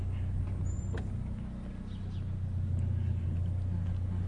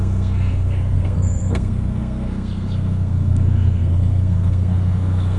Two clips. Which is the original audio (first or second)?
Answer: first